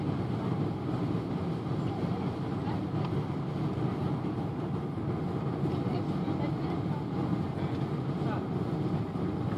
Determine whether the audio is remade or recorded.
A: recorded